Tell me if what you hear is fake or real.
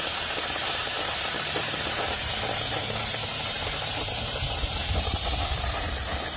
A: fake